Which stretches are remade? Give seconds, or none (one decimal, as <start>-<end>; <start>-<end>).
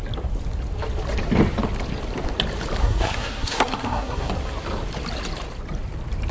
2.8-4.3